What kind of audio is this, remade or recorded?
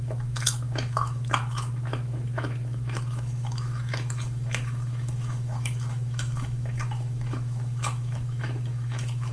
remade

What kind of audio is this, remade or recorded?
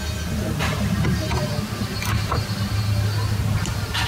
recorded